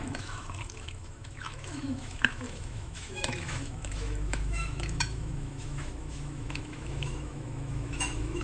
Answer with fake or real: fake